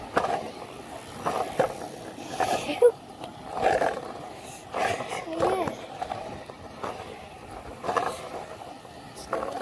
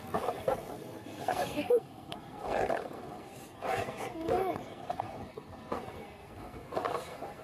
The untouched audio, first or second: first